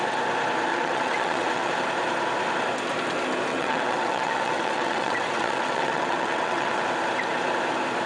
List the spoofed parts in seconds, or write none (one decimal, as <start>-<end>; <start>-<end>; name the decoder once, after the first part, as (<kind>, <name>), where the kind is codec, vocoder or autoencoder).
0.7-1.7 (vocoder, WaveNeXt); 3.5-6.8